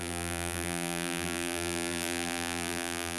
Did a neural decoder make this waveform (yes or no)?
yes